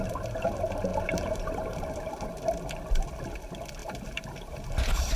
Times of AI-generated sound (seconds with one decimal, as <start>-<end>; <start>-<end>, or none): 0.9-3.0; 3.8-4.7